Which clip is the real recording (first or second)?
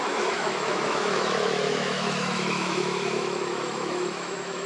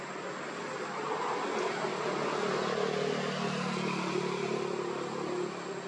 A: second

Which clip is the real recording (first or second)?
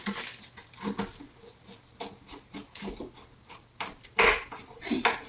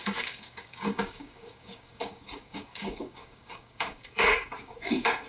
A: first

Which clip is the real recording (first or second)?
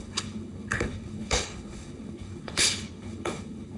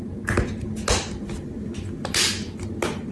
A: second